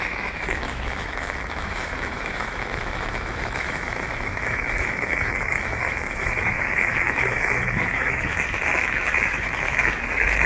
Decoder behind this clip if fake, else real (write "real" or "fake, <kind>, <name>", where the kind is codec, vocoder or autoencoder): fake, autoencoder, DAC-VAE